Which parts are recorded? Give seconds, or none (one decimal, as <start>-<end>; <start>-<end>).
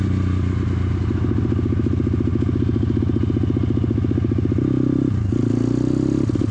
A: 0.0-6.5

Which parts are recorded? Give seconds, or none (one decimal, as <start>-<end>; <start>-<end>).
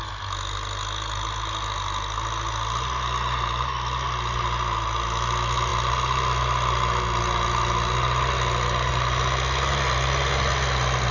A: 0.0-11.1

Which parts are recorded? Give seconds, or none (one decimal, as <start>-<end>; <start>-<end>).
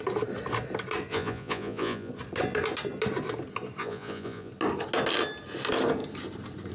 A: 0.0-1.1; 2.1-3.8; 4.5-6.7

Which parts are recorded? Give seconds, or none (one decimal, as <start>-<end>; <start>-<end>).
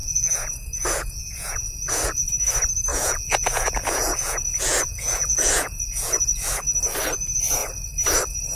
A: 2.3-2.9; 6.5-8.6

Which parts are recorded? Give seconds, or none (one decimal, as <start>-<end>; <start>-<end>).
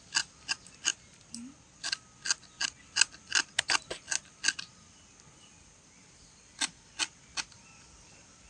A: 0.0-8.5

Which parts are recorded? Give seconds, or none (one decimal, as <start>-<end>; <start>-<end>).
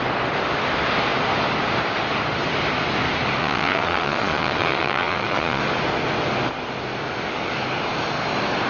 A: 0.0-3.4; 5.6-8.7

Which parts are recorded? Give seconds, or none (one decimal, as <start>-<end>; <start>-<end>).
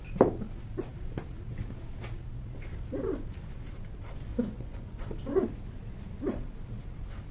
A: 0.0-4.3; 5.0-7.3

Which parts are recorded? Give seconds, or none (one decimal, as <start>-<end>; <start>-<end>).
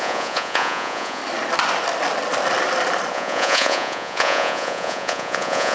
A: 1.2-3.1